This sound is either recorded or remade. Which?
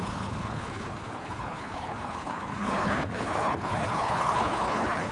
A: remade